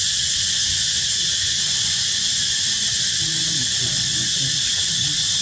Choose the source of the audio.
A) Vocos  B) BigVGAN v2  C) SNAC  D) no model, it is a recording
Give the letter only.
A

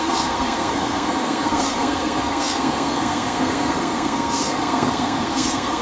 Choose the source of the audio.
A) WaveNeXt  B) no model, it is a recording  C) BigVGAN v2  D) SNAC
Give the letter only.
D